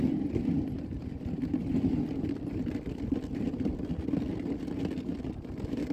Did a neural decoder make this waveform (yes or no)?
no